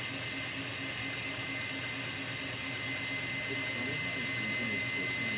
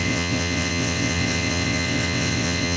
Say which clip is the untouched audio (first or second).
first